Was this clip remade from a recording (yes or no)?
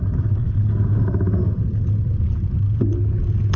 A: no